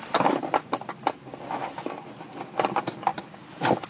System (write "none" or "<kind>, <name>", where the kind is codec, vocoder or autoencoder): none